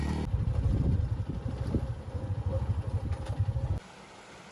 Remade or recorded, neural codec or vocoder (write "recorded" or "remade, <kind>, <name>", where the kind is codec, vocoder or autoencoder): recorded